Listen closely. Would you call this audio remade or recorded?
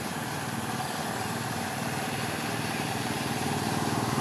recorded